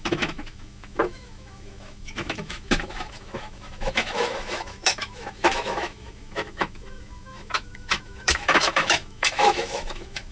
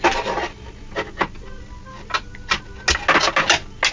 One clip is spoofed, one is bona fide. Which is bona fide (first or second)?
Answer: second